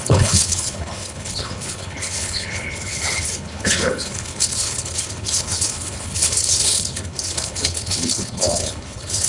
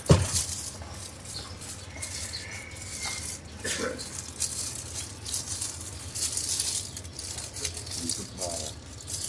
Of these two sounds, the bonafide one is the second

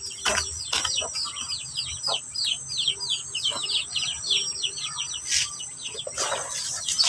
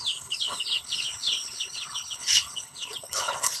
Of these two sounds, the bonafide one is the first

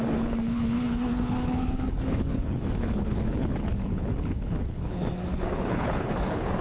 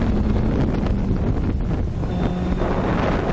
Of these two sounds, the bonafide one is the second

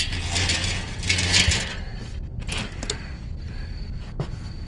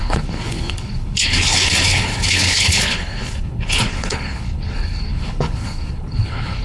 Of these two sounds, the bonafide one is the first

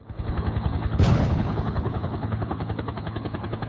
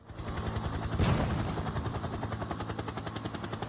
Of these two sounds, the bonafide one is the second